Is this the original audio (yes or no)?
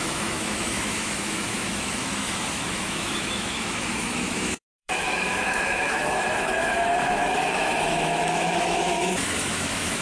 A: no